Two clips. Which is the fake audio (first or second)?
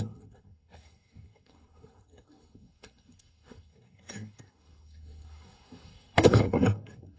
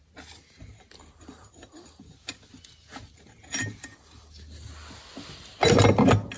first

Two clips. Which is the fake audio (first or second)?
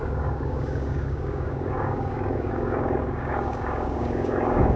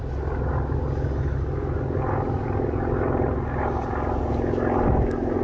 first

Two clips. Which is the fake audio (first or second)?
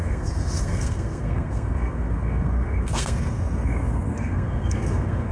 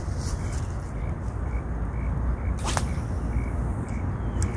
first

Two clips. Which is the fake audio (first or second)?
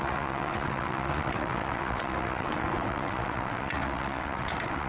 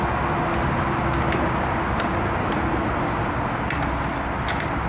first